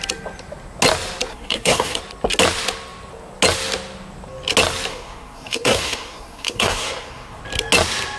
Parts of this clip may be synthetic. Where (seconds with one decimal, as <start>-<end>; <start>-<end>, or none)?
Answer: 1.3-2.0; 4.9-7.4